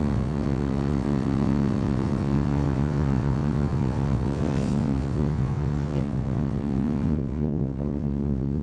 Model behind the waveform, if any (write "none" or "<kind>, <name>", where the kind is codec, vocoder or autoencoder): vocoder, WaveNeXt